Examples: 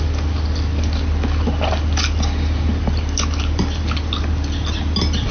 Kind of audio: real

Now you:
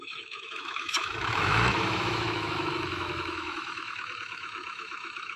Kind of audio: fake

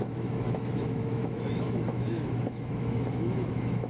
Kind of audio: fake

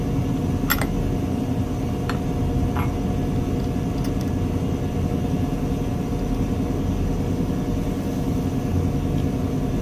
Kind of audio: real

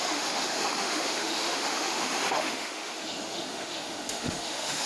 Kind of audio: fake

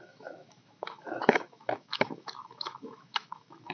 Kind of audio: fake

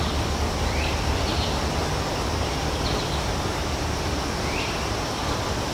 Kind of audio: real